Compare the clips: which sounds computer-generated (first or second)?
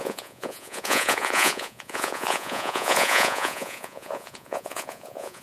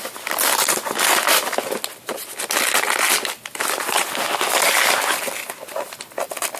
first